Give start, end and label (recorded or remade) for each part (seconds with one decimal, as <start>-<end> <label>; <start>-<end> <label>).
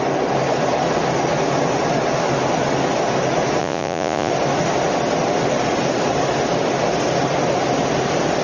0.0-3.6 recorded; 3.6-4.3 remade; 4.3-8.4 recorded